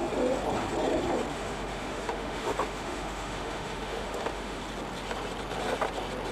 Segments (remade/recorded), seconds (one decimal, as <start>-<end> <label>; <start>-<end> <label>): 0.0-1.3 recorded; 1.3-4.6 remade; 4.6-6.3 recorded